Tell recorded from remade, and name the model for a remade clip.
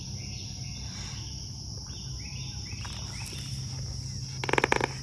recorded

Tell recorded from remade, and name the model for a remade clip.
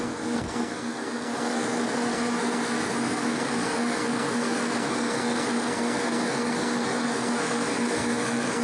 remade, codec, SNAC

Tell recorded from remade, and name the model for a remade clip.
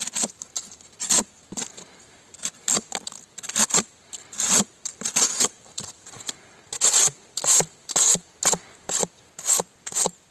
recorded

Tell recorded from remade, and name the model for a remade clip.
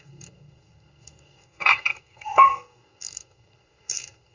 remade, codec, SNAC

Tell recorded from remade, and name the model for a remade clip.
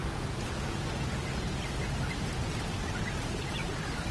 recorded